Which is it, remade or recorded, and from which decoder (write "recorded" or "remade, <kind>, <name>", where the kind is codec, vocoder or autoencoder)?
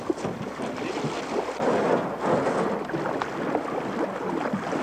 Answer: recorded